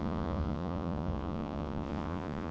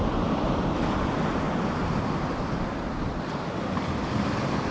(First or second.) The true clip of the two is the second